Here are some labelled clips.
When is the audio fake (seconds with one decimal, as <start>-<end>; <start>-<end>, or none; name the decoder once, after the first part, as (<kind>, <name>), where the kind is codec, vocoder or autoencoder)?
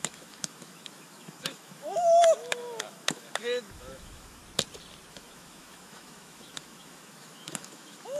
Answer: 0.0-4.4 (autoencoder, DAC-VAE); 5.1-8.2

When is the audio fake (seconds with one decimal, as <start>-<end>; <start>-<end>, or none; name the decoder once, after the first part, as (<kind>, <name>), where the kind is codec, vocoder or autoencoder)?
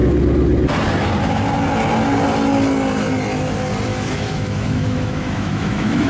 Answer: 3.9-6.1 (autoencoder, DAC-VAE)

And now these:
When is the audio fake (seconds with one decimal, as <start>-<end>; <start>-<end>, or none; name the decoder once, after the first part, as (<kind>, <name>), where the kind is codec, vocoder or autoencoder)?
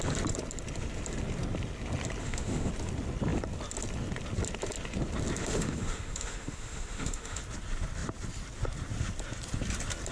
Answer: 2.2-2.7 (autoencoder, DAC-VAE); 5.4-7.4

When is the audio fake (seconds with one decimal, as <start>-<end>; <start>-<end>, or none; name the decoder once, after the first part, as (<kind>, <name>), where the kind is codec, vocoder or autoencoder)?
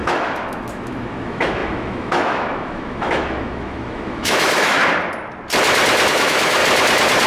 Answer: 0.0-4.8 (autoencoder, DAC-VAE); 6.1-6.6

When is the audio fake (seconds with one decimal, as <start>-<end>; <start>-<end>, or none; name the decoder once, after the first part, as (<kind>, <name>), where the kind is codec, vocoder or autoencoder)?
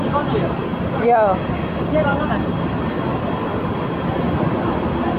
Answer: none